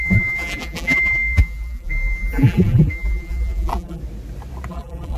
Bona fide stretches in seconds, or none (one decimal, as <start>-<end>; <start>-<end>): 4.0-4.7